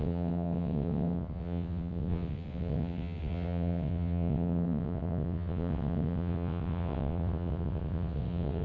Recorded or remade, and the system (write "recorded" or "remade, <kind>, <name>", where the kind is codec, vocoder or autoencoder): remade, vocoder, WaveNeXt